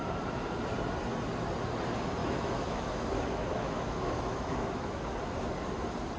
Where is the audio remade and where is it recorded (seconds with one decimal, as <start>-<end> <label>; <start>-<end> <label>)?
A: 0.0-2.2 recorded; 2.2-5.1 remade; 5.1-6.2 recorded